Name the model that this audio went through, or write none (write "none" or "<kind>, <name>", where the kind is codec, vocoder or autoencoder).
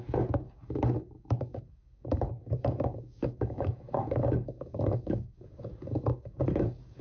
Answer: codec, DAC